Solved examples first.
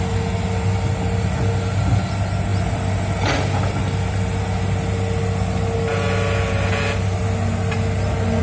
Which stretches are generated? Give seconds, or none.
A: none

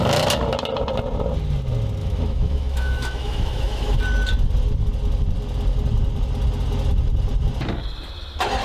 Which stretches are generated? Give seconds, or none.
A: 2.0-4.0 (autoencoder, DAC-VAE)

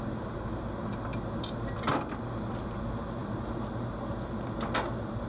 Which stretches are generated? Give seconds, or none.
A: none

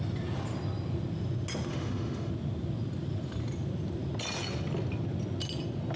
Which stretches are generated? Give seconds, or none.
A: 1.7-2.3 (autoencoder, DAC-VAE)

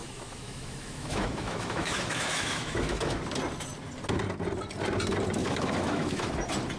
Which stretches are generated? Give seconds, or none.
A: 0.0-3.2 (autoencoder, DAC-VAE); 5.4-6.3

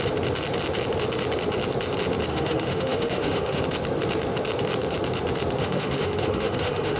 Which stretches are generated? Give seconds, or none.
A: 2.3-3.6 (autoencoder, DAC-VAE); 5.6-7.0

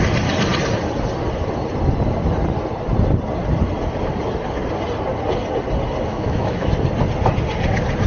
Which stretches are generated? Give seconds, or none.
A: 6.1-6.7 (autoencoder, DAC-VAE)

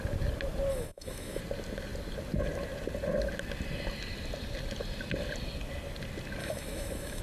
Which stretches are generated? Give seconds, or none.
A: 0.7-1.4 (autoencoder, DAC-VAE); 6.4-7.2